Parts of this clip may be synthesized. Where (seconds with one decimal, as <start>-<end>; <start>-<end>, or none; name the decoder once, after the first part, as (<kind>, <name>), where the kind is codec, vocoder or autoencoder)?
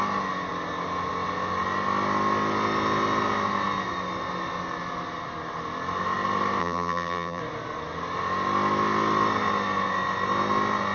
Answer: 6.6-7.4 (vocoder, BigVGAN v2)